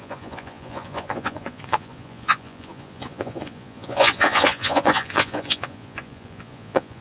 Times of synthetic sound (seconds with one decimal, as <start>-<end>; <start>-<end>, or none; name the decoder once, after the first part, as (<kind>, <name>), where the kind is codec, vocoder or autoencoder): 0.0-7.0 (vocoder, Vocos)